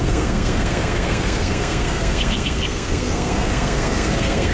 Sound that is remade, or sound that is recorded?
remade